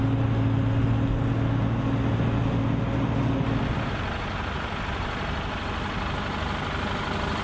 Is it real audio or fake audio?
real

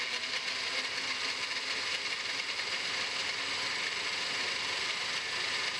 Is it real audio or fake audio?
fake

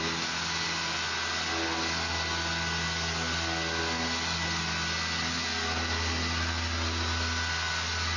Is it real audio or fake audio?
real